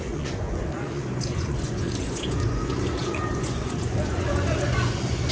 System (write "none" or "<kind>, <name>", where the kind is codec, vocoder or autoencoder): vocoder, Vocos